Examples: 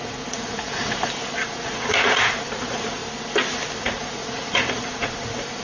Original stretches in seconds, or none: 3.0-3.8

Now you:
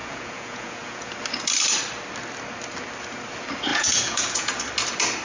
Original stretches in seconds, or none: 1.1-3.7; 4.6-5.2

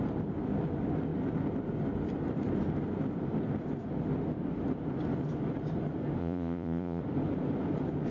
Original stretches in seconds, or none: 0.0-6.2; 7.0-8.1

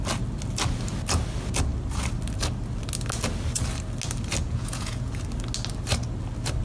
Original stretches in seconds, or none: 0.0-4.4; 5.1-6.6

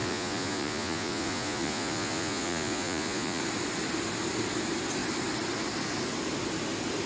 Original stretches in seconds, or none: 3.4-7.1

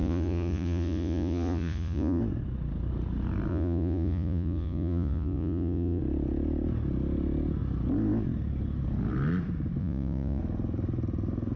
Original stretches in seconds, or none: 2.2-3.5; 6.0-9.8; 10.4-11.6